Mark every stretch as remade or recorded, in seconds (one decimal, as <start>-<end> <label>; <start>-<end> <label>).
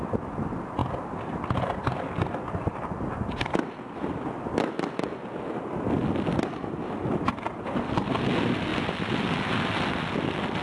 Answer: 0.0-10.6 recorded